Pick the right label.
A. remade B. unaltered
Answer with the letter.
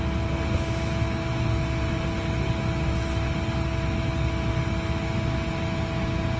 B